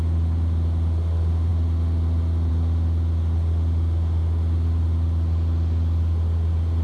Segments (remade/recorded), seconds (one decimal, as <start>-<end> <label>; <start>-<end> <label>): 0.0-6.8 recorded